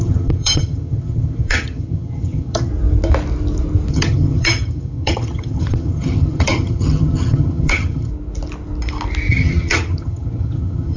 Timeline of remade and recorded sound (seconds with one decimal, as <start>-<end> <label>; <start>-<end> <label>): 0.0-2.7 remade; 2.7-3.9 recorded; 3.9-8.1 remade; 8.1-9.3 recorded; 9.3-11.0 remade

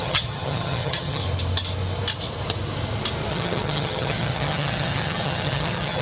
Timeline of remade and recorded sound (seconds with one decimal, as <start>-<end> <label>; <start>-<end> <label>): 0.0-1.2 remade; 1.2-3.3 recorded; 3.3-6.0 remade

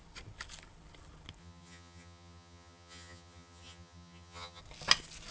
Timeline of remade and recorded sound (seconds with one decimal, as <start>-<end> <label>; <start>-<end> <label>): 0.0-1.4 recorded; 1.4-4.6 remade; 4.6-5.3 recorded

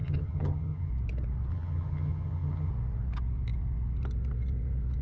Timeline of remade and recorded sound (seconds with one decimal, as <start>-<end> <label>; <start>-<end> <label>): 0.0-0.9 remade; 0.9-1.5 recorded; 1.5-2.7 remade; 2.7-5.0 recorded

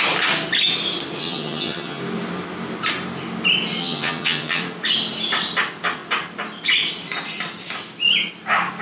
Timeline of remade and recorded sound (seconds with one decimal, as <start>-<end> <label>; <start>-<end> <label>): 0.0-1.2 recorded; 1.2-2.0 remade; 2.0-3.8 recorded; 3.8-4.6 remade; 4.6-8.8 recorded

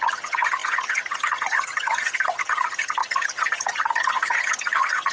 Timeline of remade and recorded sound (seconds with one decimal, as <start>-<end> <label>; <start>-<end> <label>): 0.0-5.1 remade